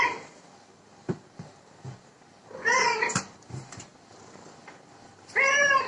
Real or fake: fake